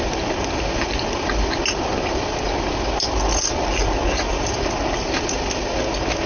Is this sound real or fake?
real